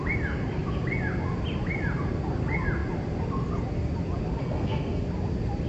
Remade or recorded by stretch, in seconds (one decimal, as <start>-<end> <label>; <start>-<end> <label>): 0.0-4.4 recorded; 4.4-5.0 remade; 5.0-5.7 recorded